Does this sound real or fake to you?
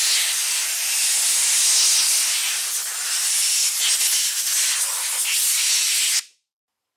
real